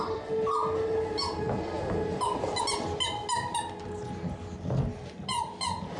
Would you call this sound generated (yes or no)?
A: no